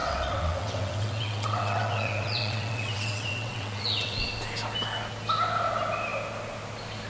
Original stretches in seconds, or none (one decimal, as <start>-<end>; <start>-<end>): 4.3-7.1